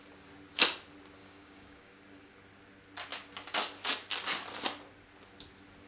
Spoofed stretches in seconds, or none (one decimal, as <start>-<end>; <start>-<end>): 1.2-2.0